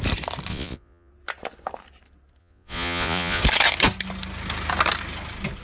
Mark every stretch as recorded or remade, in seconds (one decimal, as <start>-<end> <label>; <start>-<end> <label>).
0.0-0.5 recorded; 0.5-1.1 remade; 1.1-2.4 recorded; 2.4-3.4 remade; 3.4-5.6 recorded